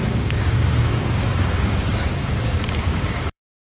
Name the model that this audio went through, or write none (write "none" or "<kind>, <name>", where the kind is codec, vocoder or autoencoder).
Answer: codec, DAC